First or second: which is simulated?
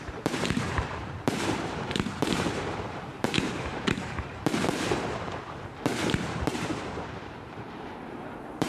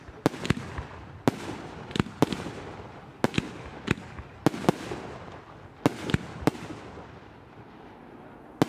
first